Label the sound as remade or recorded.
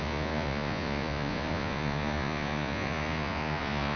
remade